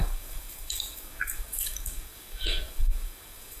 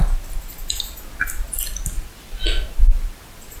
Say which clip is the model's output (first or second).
first